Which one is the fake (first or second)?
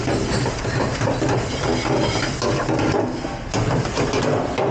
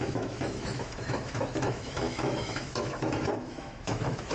second